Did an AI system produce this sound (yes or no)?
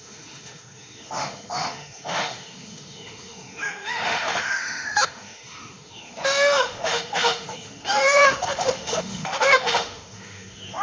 yes